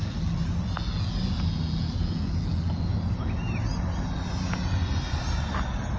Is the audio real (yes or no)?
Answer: yes